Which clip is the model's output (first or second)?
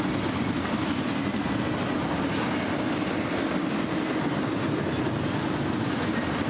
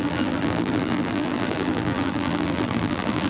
second